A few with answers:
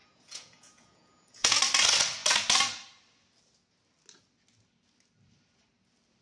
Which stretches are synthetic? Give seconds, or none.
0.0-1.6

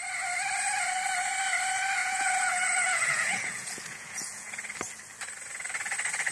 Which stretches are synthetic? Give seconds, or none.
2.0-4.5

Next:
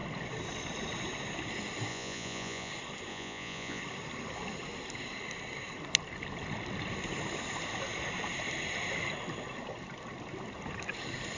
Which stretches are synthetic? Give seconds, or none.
1.9-2.7; 3.1-3.8

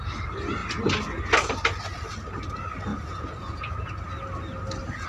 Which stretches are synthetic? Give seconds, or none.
2.9-3.8

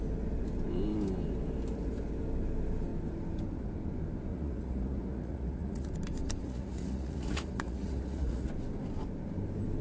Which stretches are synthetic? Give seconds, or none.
4.3-5.9; 6.4-8.5

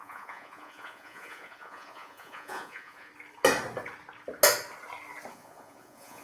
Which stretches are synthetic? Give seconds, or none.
0.0-3.1; 5.3-6.2

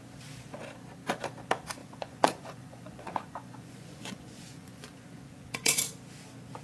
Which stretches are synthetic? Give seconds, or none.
1.8-5.8

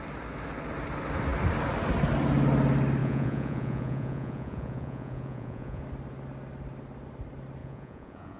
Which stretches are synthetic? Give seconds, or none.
3.0-5.8; 7.6-8.4